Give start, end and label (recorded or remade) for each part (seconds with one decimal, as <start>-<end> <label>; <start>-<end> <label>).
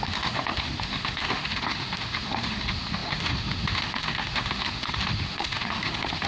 0.0-6.3 remade